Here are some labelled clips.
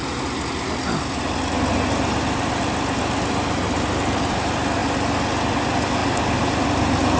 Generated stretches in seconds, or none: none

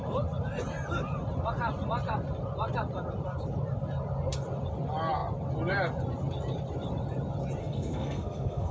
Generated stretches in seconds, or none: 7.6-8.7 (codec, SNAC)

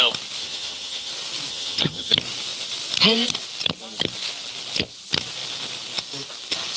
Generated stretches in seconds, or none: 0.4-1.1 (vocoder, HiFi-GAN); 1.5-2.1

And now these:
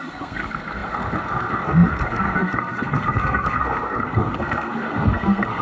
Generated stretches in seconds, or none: 0.0-5.6 (codec, SNAC)

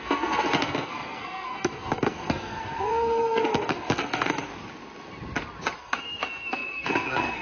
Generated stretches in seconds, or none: 0.0-4.5 (codec, SNAC); 5.8-7.4

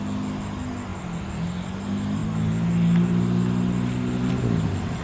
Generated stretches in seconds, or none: none

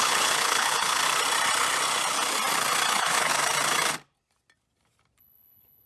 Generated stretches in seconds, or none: 0.0-1.0 (codec, HILCodec); 2.9-3.3; 5.2-5.9

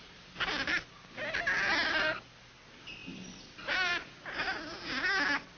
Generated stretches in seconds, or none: none